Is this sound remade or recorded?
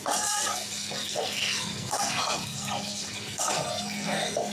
remade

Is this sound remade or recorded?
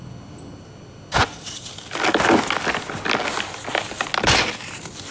recorded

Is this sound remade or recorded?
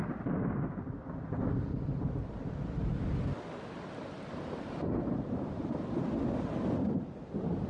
recorded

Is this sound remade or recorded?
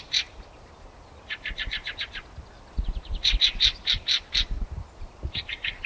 recorded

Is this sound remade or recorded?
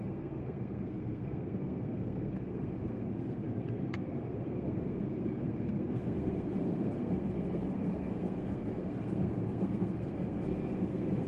remade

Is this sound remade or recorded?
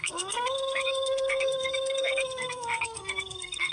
remade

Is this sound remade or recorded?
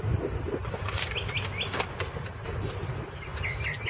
recorded